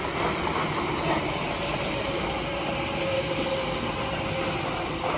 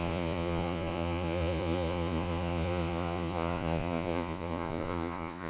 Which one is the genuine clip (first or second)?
first